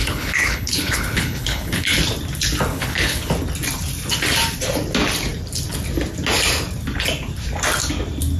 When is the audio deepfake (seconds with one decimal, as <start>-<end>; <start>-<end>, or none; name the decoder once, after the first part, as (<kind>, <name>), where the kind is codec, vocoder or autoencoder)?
0.0-2.0 (codec, HILCodec); 2.7-3.3